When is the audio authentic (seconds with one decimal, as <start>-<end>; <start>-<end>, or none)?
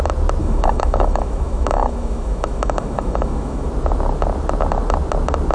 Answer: 0.0-0.4; 3.7-5.5